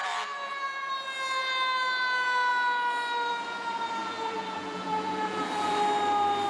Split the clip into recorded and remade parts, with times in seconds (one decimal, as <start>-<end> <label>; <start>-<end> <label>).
0.0-0.9 remade; 0.9-4.0 recorded; 4.0-5.8 remade; 5.8-6.5 recorded